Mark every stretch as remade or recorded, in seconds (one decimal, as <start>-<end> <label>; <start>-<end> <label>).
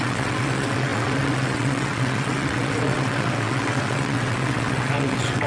0.0-5.5 remade